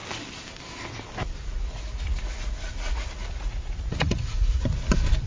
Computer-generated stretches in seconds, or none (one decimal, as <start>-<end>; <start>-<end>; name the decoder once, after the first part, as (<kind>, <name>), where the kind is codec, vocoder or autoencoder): 1.4-4.6 (vocoder, Vocos)

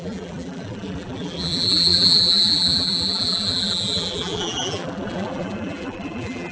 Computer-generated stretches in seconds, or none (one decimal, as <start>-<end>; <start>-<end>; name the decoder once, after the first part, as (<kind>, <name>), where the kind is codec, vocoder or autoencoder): 0.0-6.5 (vocoder, BigVGAN v2)

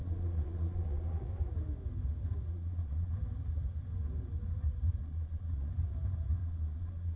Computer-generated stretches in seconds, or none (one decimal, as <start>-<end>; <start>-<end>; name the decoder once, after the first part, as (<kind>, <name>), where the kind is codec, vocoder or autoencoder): 0.0-1.3 (vocoder, Vocos); 2.5-3.1; 5.0-5.7; 6.4-7.2

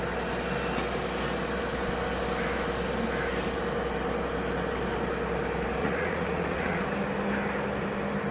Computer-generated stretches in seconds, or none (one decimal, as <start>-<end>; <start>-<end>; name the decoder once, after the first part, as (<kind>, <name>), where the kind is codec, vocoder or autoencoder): 5.8-6.8 (vocoder, Vocos)

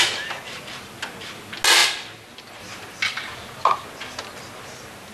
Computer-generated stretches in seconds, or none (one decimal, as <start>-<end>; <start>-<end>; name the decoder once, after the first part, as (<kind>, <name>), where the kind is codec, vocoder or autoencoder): none

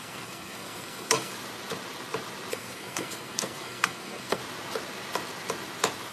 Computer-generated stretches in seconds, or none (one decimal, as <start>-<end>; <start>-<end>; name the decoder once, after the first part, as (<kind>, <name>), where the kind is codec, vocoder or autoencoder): 0.0-1.3 (codec, SNAC); 2.5-4.4